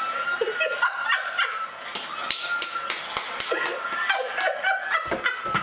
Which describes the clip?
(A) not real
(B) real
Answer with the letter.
B